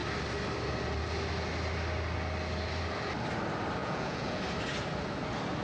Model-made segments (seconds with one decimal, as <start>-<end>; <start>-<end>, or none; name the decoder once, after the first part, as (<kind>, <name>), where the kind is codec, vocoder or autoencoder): 3.8-4.4 (vocoder, Vocos)